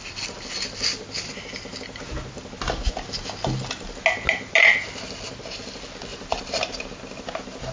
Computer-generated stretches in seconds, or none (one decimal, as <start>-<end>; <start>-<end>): 6.1-6.9